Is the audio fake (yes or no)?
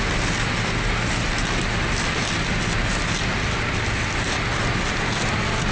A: no